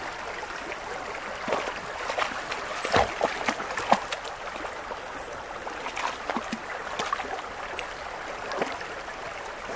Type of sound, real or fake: real